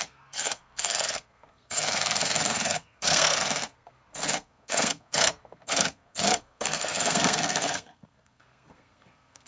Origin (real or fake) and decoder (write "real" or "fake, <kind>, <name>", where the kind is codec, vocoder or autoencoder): fake, codec, SNAC